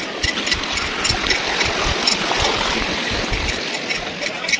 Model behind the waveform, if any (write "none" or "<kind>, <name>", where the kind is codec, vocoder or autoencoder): none